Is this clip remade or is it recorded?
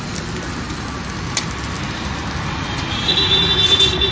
recorded